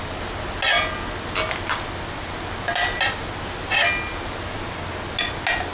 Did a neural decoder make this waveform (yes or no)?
no